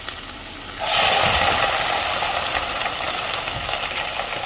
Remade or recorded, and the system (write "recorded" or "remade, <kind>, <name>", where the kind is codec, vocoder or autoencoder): recorded